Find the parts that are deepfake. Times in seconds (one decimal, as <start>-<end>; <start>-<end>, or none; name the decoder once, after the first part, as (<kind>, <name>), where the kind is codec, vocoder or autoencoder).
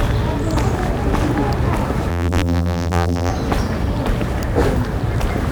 2.1-3.3 (vocoder, BigVGAN v2)